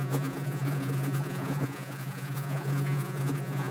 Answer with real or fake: fake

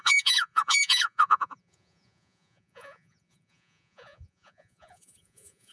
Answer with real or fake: fake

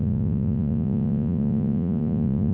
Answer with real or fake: fake